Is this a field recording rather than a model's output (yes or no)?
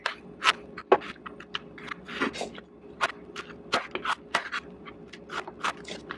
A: yes